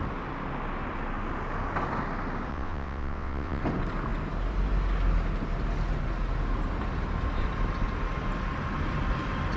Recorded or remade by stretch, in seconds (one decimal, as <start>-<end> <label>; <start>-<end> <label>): 0.0-2.5 recorded; 2.5-3.6 remade; 3.6-9.6 recorded